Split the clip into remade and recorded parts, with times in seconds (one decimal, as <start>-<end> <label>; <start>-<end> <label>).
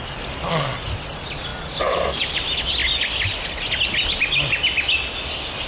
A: 0.0-5.7 recorded